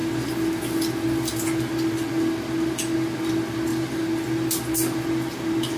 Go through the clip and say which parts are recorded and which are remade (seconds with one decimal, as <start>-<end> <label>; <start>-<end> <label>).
0.0-5.8 recorded